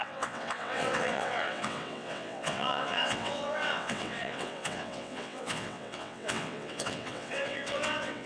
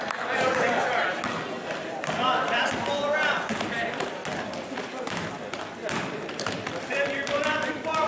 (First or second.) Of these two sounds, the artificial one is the first